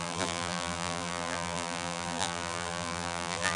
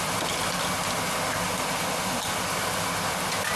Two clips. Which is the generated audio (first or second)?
first